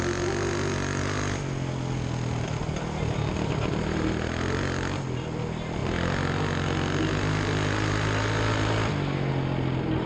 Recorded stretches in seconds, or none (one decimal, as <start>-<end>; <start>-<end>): 0.0-10.1